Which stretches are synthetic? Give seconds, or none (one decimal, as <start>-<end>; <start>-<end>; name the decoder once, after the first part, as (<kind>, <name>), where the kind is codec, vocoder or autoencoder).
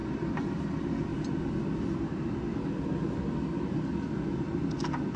0.0-1.1 (vocoder, BigVGAN v2); 1.6-2.5; 3.6-5.2